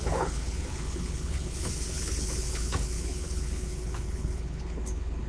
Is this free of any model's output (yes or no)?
no